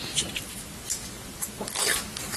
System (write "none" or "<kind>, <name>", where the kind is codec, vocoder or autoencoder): vocoder, BigVGAN v2